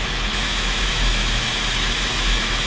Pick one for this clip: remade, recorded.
remade